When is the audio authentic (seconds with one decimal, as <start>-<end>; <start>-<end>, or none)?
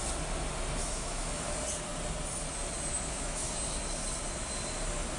0.0-0.8; 1.4-2.9; 3.5-5.2